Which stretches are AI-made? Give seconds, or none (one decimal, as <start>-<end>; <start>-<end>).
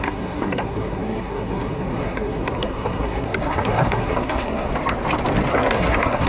0.0-4.7; 5.5-6.3